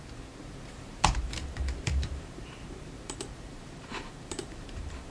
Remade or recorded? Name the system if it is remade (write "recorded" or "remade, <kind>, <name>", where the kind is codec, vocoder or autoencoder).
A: remade, vocoder, BigVGAN v2